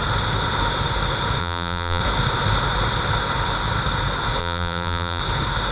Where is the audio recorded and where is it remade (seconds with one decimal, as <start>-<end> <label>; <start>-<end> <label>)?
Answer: 0.0-1.4 recorded; 1.4-2.0 remade; 2.0-4.4 recorded; 4.4-5.2 remade; 5.2-5.7 recorded